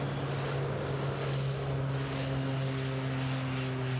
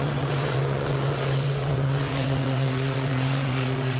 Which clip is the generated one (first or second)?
second